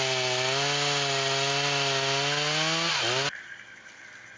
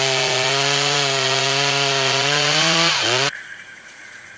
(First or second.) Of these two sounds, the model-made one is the second